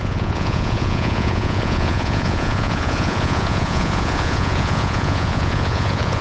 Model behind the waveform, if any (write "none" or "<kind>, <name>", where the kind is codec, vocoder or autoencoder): vocoder, Vocos